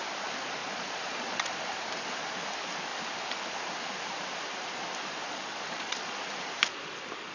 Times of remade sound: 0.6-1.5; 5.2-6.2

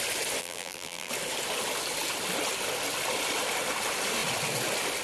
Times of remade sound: 0.4-1.1

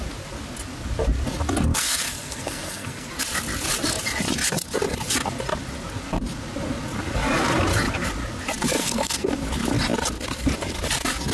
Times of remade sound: 1.7-3.1; 8.8-9.3

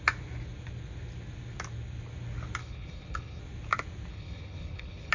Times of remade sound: 2.6-3.4; 4.1-5.1

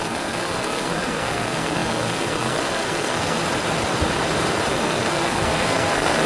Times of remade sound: 0.0-3.4; 4.7-6.3